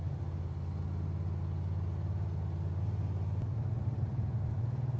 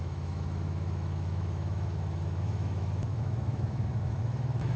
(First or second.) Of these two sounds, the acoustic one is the first